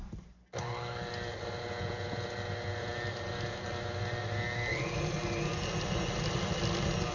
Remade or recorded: recorded